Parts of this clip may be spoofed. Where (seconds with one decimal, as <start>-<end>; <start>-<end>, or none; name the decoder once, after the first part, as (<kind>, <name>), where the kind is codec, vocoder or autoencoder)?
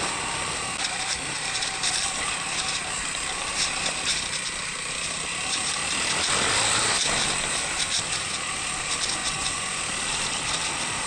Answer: 9.2-9.8 (vocoder, Vocos)